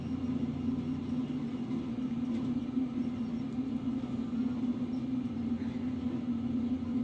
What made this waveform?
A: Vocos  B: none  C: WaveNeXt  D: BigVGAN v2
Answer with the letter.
B